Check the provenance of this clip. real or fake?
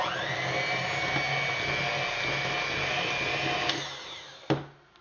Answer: real